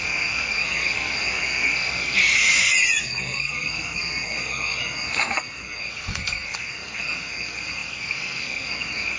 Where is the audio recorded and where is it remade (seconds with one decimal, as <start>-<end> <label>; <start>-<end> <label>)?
0.0-2.2 remade; 2.2-3.0 recorded; 3.0-9.2 remade